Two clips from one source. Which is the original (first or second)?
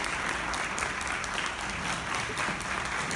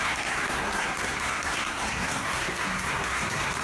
first